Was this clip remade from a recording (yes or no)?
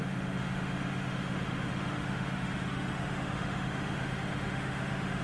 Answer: yes